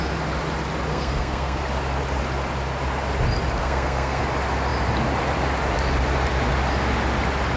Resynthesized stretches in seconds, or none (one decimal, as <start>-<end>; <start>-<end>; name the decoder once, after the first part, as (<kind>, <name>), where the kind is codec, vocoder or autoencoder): 0.9-1.6 (codec, SNAC); 3.6-4.2